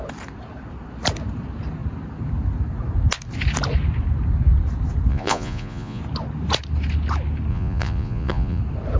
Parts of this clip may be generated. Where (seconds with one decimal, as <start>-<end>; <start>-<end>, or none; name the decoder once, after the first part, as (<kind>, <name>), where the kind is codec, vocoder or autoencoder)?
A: 5.1-6.0 (vocoder, Vocos); 7.5-8.6